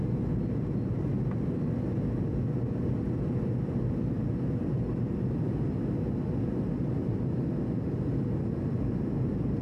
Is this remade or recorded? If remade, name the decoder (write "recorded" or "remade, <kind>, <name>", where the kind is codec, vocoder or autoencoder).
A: recorded